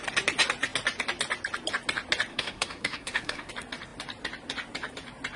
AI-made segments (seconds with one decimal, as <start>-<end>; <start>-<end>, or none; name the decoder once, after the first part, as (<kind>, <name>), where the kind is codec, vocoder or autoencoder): 2.3-3.5 (codec, SNAC)